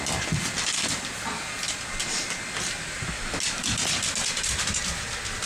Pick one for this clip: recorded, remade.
recorded